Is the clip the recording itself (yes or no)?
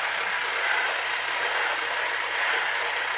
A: yes